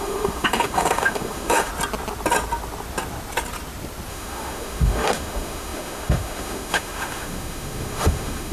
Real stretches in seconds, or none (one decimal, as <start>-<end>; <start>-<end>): 1.7-4.1